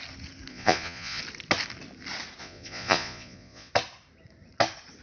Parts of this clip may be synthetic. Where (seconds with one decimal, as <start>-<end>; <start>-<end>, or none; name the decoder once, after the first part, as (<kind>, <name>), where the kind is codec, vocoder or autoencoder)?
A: 0.5-1.2 (vocoder, Vocos); 2.4-3.7